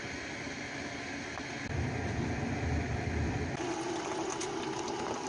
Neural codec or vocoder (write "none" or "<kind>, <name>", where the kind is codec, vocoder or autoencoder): none